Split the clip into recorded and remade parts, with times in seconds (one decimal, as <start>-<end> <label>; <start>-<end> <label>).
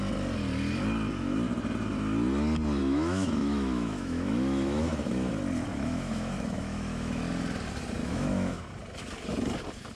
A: 0.0-2.8 recorded; 2.8-5.3 remade; 5.3-5.7 recorded; 5.7-7.2 remade; 7.2-8.0 recorded; 8.0-8.6 remade; 8.6-9.9 recorded